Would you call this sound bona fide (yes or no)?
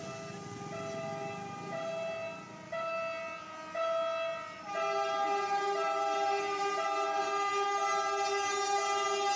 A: yes